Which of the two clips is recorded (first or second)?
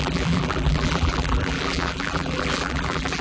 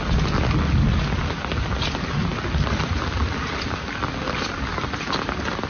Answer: second